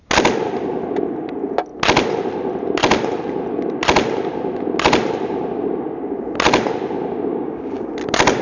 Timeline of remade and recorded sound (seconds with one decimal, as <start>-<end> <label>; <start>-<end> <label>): 0.0-7.3 recorded; 7.3-7.9 remade; 7.9-8.4 recorded